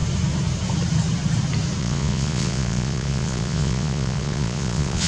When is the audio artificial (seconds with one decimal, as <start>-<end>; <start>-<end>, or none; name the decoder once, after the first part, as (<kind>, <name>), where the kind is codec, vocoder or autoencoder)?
1.8-5.1 (vocoder, Vocos)